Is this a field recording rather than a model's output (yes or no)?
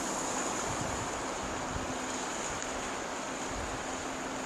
yes